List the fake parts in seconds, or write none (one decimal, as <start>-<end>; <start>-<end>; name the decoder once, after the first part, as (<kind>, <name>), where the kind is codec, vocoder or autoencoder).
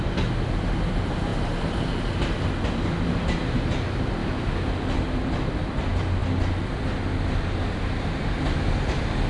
4.2-4.7 (autoencoder, DAC-VAE)